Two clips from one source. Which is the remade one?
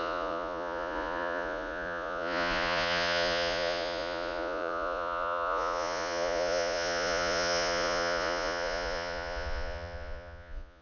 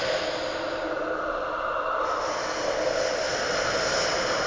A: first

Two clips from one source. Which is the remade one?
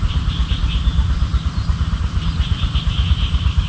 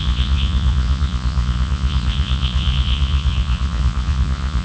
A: second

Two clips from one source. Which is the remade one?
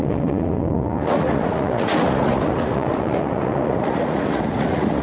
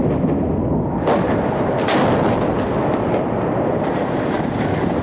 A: first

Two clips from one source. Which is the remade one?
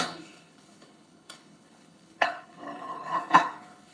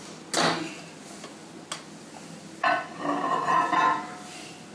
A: first